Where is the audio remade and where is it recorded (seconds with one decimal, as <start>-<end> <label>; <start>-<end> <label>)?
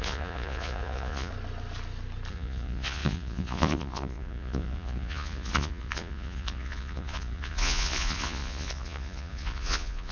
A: 0.0-1.3 remade; 1.3-2.3 recorded; 2.3-10.1 remade